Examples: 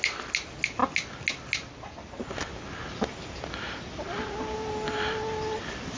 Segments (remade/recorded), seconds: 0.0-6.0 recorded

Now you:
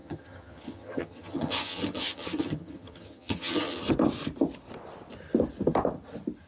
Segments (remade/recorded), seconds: 0.0-3.9 remade; 3.9-6.5 recorded

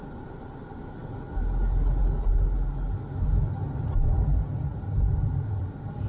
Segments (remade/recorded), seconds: 0.0-6.1 recorded

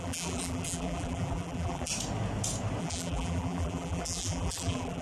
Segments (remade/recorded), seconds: 0.0-1.9 remade; 1.9-2.8 recorded; 2.8-5.0 remade

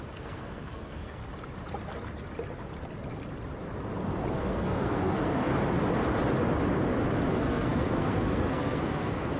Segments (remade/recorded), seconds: 0.0-1.2 remade; 1.2-4.3 recorded; 4.3-5.5 remade; 5.5-7.3 recorded; 7.3-9.4 remade

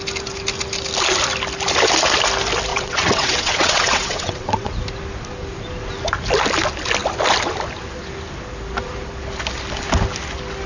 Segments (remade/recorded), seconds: 0.0-2.7 recorded; 2.7-4.7 remade; 4.7-10.7 recorded

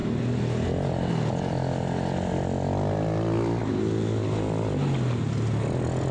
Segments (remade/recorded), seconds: 0.0-6.1 recorded

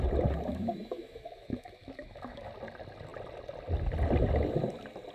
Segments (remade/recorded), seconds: 0.0-0.5 recorded; 0.5-2.5 remade; 2.5-5.1 recorded